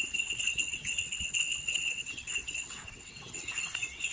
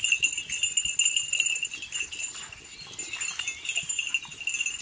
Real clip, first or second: second